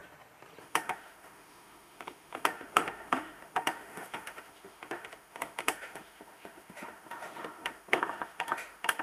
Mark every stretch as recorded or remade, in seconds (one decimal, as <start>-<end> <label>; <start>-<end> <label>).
0.0-0.6 recorded; 0.6-9.0 remade

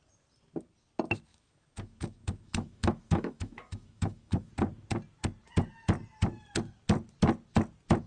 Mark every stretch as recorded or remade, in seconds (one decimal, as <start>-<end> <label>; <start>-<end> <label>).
0.0-1.3 recorded; 1.3-4.5 remade; 4.5-8.1 recorded

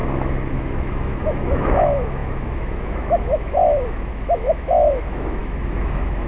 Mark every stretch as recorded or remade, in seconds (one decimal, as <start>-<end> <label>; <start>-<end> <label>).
0.0-0.5 recorded; 0.5-6.3 remade

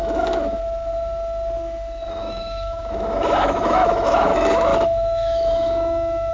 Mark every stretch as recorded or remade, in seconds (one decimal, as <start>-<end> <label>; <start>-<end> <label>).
0.0-0.6 remade; 0.6-2.2 recorded; 2.2-6.3 remade

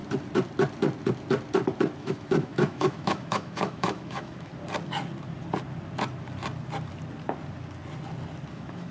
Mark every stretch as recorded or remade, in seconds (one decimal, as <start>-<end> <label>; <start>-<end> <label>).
0.0-2.0 recorded; 2.0-4.5 remade; 4.5-8.5 recorded; 8.5-8.9 remade

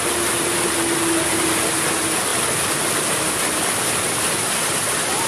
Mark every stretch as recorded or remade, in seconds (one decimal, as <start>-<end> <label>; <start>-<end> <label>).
0.0-5.3 recorded

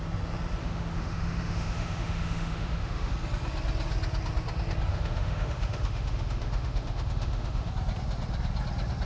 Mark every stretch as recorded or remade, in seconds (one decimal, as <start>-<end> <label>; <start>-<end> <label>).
0.0-0.6 recorded; 0.6-3.1 remade; 3.1-4.9 recorded; 4.9-7.7 remade; 7.7-9.1 recorded